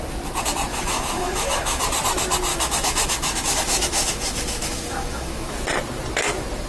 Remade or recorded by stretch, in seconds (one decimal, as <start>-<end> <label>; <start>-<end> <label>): 0.0-0.7 recorded; 0.7-1.8 remade; 1.8-2.5 recorded; 2.5-5.6 remade; 5.6-6.7 recorded